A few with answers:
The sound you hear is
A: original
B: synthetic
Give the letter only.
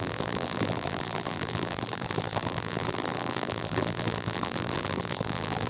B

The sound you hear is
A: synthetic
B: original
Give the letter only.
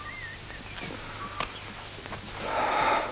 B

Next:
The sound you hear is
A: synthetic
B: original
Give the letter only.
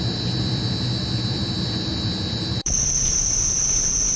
A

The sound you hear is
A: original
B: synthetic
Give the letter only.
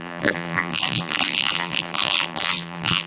B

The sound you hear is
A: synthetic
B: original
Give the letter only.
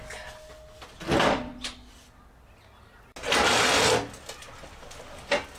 B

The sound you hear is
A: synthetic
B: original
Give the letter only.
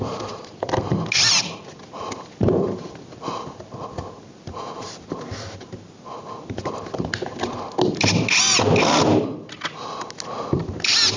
B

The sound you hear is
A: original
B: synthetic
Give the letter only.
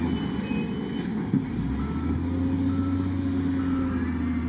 A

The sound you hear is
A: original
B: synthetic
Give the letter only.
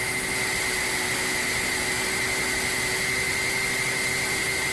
A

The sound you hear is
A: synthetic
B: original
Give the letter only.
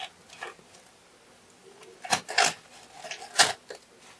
B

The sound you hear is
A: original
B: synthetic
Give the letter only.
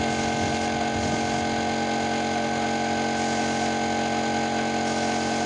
A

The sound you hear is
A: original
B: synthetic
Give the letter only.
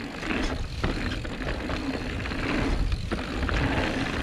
A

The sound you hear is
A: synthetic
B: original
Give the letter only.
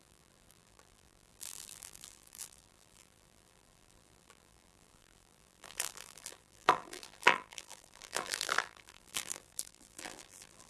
A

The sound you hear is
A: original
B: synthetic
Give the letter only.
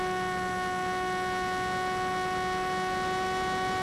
A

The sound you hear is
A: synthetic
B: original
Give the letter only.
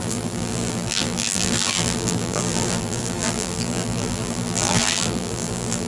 A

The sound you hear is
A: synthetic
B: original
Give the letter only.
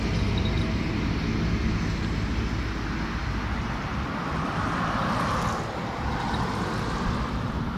B